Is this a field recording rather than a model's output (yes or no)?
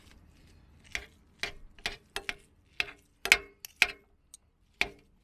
yes